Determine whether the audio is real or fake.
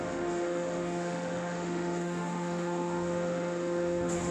fake